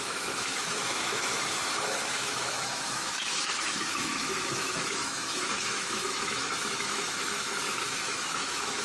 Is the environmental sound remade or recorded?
remade